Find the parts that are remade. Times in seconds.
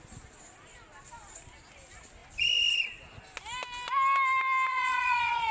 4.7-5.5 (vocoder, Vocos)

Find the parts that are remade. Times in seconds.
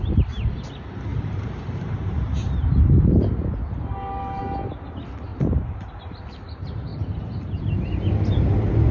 1.1-4.4 (vocoder, BigVGAN v2); 5.3-5.9; 6.9-7.6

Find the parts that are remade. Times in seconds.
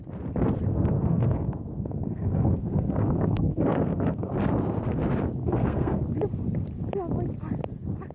0.7-4.3 (codec, SNAC); 5.4-6.0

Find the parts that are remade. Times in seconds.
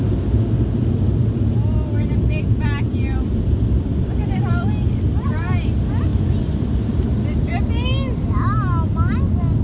3.1-4.7 (vocoder, BigVGAN v2); 6.1-7.2